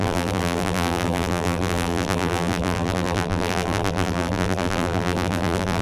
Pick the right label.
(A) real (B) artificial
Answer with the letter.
B